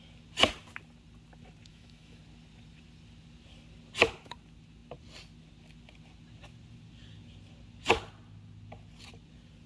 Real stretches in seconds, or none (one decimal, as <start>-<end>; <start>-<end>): 0.0-1.7; 2.2-9.7